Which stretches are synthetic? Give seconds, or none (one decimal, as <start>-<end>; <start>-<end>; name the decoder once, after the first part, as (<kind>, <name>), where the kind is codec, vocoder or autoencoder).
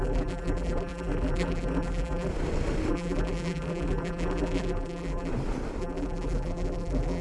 0.0-2.3 (vocoder, BigVGAN v2); 2.9-5.3; 5.8-7.2